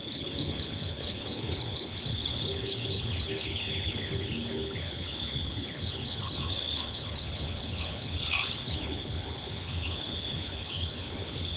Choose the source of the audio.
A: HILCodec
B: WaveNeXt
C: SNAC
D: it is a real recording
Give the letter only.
A